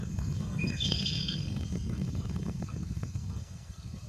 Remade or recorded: remade